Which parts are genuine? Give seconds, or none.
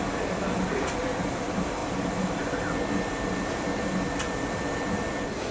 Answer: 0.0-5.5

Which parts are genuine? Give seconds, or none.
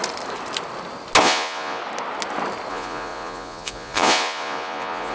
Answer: 0.0-1.2; 1.8-2.7